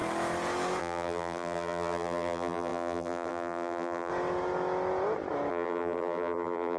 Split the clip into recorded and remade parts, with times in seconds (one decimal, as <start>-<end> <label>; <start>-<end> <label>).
0.0-0.8 recorded; 0.8-4.1 remade; 4.1-5.5 recorded; 5.5-6.8 remade